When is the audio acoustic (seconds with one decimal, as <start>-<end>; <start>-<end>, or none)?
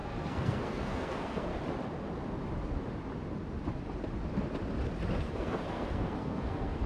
1.5-5.2